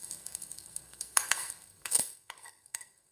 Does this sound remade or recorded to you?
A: remade